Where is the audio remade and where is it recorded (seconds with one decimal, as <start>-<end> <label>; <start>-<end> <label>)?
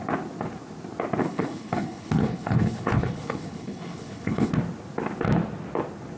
0.0-1.2 recorded; 1.2-4.5 remade; 4.5-6.2 recorded